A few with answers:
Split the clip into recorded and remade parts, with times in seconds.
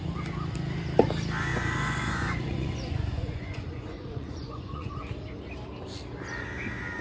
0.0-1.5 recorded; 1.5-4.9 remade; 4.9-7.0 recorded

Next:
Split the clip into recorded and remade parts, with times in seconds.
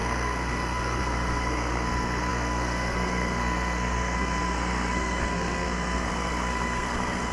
0.0-7.3 remade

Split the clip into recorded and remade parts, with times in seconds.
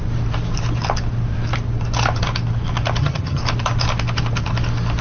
0.0-3.0 recorded; 3.0-3.4 remade; 3.4-5.0 recorded